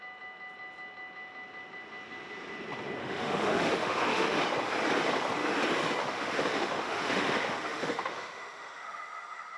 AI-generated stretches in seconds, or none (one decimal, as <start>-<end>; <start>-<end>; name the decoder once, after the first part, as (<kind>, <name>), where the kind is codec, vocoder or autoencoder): 3.0-4.4 (autoencoder, DAC-VAE); 6.0-9.6